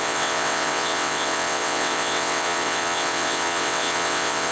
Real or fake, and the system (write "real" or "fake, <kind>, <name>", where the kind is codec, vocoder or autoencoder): fake, vocoder, WaveNeXt